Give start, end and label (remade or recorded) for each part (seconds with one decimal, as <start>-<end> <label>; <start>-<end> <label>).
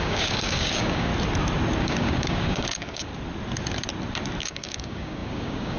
0.0-1.1 remade; 1.1-1.8 recorded; 1.8-3.1 remade; 3.1-4.4 recorded; 4.4-5.8 remade